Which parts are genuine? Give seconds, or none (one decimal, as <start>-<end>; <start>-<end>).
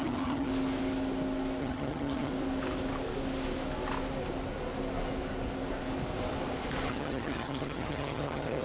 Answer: 0.5-1.6; 2.3-6.9